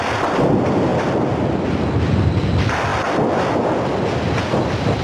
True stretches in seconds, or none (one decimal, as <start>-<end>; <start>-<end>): 0.0-5.0